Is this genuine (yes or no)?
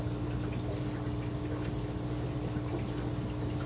yes